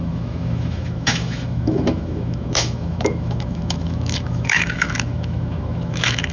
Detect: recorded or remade remade